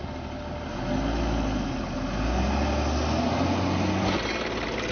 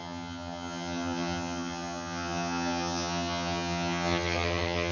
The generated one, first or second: second